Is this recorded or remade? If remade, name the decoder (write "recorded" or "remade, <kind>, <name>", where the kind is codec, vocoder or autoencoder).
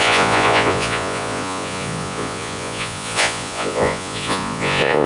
remade, vocoder, Vocos